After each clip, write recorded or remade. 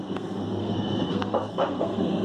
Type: remade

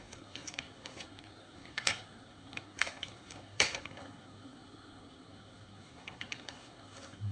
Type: remade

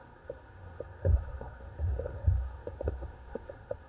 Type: remade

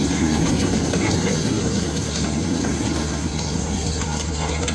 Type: remade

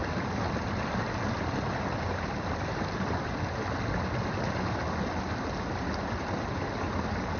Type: recorded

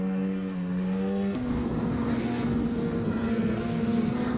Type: remade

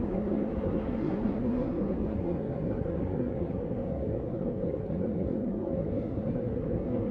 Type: remade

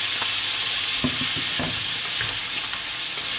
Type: recorded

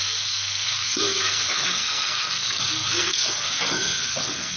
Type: remade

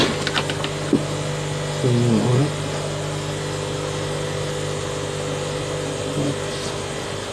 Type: recorded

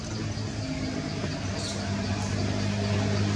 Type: recorded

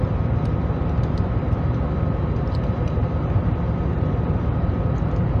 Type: recorded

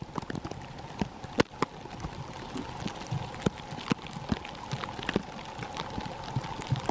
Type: recorded